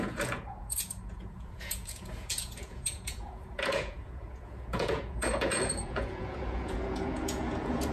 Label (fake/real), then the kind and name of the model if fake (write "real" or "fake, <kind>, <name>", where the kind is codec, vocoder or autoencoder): fake, vocoder, Vocos